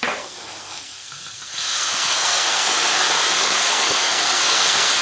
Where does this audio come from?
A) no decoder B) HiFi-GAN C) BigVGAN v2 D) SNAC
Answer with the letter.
D